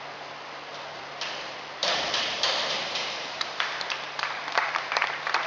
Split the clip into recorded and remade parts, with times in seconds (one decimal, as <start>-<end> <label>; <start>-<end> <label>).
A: 0.0-1.8 recorded; 1.8-5.1 remade; 5.1-5.5 recorded